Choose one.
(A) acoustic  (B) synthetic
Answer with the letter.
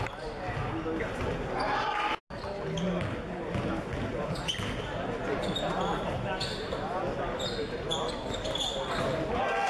A